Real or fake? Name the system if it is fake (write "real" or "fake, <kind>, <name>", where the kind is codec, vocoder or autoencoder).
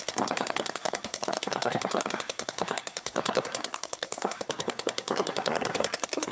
fake, codec, SNAC